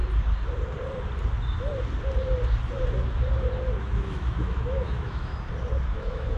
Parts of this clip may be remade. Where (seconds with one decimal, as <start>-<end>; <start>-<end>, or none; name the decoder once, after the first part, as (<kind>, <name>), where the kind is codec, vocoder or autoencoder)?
3.8-5.3 (autoencoder, DAC-VAE); 5.9-6.4